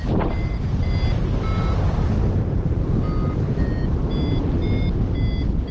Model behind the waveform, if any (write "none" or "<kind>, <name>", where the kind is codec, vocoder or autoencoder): none